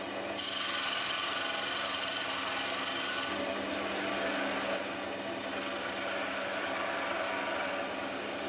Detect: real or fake real